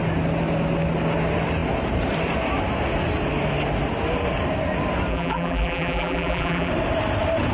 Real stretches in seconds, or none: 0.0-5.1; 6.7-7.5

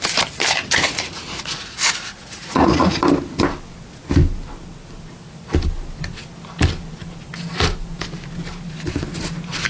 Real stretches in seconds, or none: 0.0-0.9; 3.0-9.7

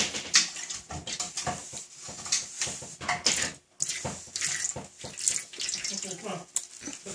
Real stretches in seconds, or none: 0.0-7.1

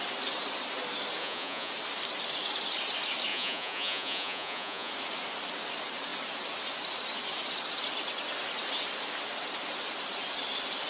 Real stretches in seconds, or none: 0.0-1.2; 1.7-3.3; 4.9-10.9

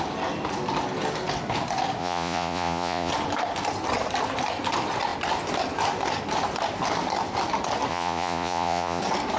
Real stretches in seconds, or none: 0.0-2.0; 3.1-7.9; 9.0-9.4